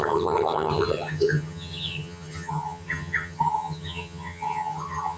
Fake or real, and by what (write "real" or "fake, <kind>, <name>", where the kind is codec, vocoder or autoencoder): fake, vocoder, HiFi-GAN